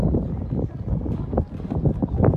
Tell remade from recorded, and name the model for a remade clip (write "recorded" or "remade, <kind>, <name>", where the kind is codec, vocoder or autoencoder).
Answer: recorded